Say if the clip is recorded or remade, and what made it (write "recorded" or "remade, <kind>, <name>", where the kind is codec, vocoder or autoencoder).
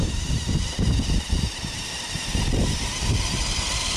recorded